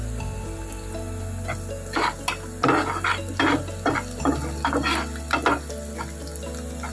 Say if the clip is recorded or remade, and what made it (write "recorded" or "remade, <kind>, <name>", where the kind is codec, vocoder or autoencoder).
recorded